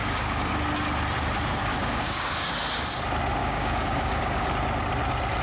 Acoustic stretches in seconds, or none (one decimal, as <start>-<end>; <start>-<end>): 0.5-1.7; 2.5-3.4; 4.5-5.4